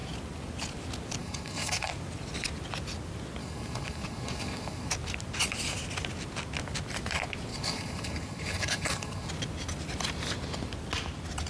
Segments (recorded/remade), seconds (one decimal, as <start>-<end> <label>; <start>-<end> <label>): 0.0-1.2 recorded; 1.2-1.9 remade; 1.9-3.4 recorded; 3.4-4.9 remade; 4.9-7.5 recorded; 7.5-9.3 remade; 9.3-11.5 recorded